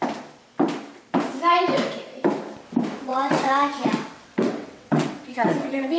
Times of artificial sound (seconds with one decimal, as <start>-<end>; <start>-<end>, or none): 3.1-6.0